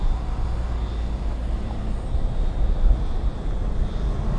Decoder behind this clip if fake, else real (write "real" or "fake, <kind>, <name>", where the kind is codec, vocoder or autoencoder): real